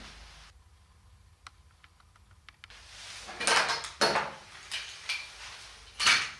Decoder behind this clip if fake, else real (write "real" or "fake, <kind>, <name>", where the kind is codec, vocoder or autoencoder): real